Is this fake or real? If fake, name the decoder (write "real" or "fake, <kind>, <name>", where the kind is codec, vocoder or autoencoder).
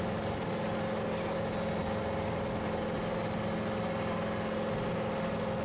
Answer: real